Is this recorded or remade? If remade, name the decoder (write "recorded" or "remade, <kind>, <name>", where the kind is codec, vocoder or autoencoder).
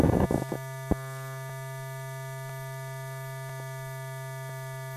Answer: recorded